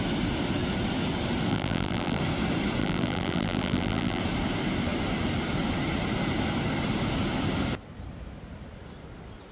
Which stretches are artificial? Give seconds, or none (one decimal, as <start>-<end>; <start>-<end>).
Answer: 1.5-2.2; 2.8-4.2